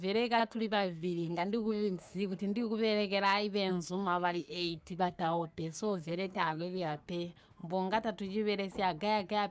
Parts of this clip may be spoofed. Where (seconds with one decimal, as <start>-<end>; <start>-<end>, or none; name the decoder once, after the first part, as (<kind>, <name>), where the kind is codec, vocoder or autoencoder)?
0.4-2.4 (codec, SNAC); 3.7-7.0